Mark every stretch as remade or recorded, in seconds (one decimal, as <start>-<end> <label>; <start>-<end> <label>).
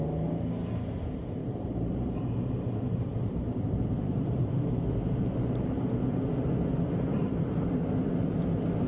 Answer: 0.0-1.4 recorded; 1.4-6.3 remade; 6.3-8.9 recorded